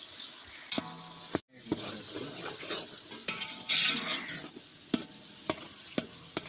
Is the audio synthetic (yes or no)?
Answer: no